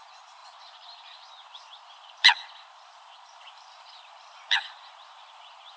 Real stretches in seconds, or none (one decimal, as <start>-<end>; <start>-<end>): none